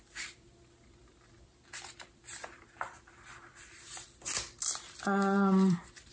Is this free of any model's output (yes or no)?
no